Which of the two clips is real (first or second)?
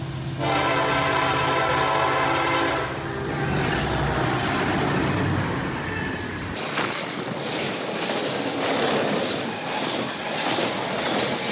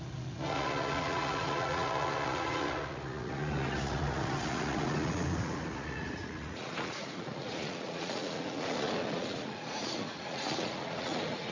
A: first